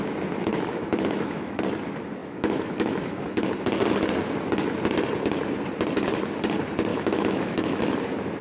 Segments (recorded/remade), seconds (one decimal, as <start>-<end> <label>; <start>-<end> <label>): 0.0-0.4 recorded; 0.4-1.6 remade; 1.6-2.2 recorded; 2.2-3.5 remade; 3.5-6.9 recorded; 6.9-7.8 remade; 7.8-8.4 recorded